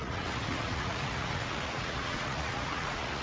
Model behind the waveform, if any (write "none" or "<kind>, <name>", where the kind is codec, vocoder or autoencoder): vocoder, Vocos